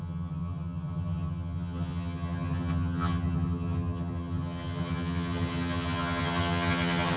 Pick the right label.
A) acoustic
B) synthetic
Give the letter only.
B